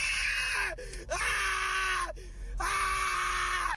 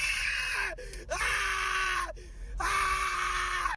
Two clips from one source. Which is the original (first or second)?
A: first